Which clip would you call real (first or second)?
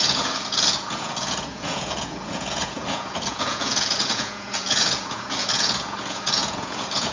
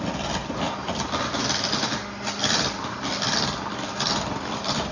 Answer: second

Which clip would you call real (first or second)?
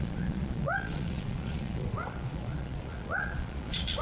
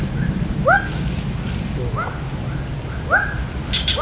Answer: second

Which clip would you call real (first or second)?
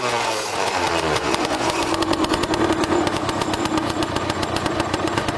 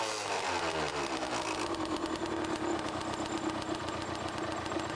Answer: second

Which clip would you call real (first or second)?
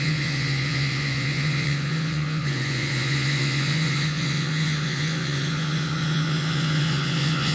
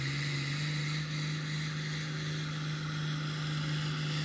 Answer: second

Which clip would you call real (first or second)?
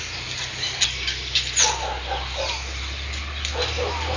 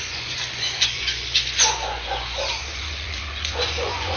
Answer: first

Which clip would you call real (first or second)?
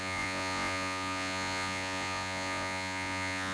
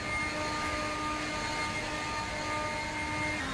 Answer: second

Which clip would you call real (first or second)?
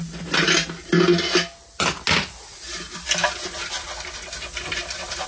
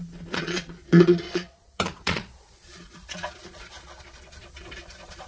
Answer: first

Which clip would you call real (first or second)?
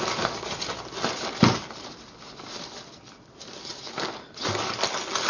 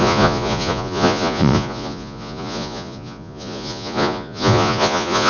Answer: first